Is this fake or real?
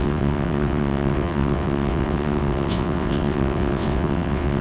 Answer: fake